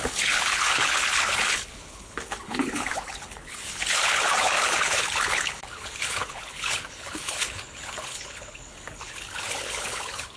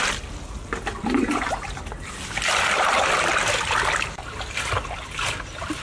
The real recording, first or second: second